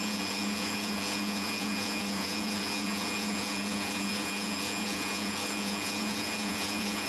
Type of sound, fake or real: fake